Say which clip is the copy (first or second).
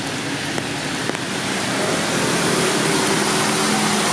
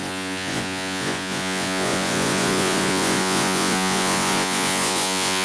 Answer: second